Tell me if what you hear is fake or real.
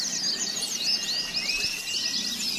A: real